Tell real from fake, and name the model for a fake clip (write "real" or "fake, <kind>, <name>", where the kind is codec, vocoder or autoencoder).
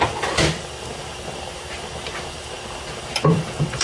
real